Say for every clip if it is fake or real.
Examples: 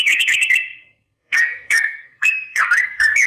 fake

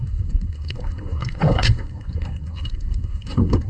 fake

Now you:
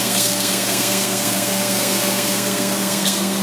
fake